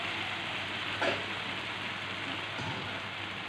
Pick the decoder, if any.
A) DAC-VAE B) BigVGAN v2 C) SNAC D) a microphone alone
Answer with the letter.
D